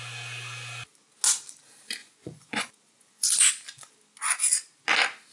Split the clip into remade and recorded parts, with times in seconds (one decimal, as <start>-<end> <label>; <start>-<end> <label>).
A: 0.0-2.0 recorded; 2.0-3.5 remade; 3.5-5.3 recorded